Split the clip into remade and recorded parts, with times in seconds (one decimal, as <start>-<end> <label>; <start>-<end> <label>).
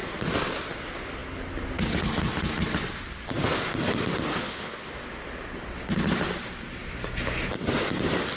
0.0-4.3 recorded; 4.3-4.9 remade; 4.9-8.4 recorded